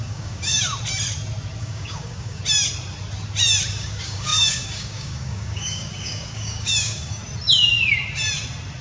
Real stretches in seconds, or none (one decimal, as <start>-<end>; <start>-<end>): 0.6-1.6; 2.4-3.7; 7.2-8.8